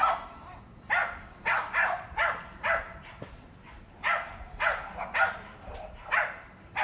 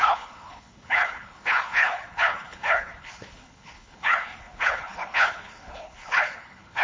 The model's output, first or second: second